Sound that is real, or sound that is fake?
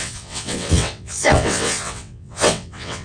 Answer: fake